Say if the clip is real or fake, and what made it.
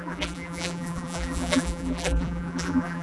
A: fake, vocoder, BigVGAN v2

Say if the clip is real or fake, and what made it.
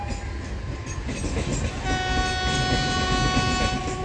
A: real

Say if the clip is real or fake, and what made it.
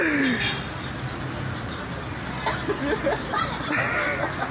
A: real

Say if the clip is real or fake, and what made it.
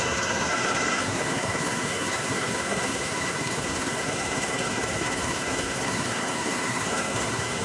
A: fake, codec, SNAC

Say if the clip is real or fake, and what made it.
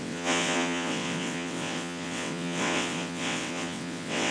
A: fake, vocoder, WaveNeXt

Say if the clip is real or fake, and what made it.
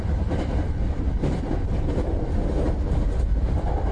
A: real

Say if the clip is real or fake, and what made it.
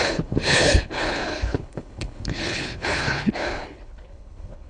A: fake, codec, HILCodec